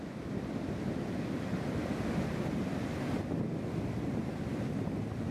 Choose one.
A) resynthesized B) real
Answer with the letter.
B